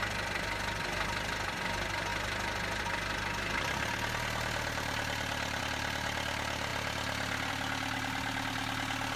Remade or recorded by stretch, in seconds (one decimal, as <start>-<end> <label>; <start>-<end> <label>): 0.0-9.2 recorded